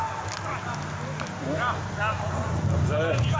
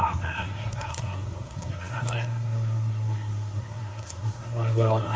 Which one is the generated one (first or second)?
second